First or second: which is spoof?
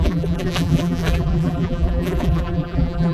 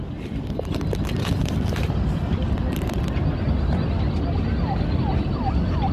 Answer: first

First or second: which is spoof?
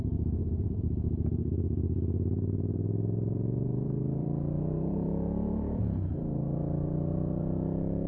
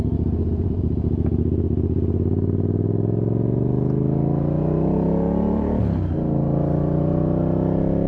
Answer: first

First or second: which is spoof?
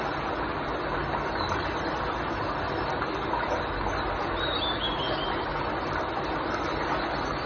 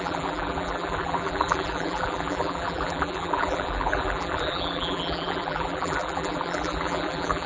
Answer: second